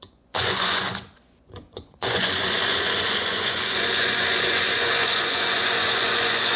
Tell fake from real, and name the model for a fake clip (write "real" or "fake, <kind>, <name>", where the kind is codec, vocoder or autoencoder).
fake, vocoder, Vocos